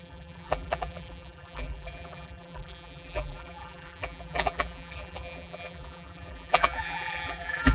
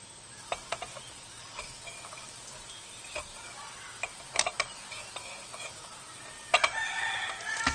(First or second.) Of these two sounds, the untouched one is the second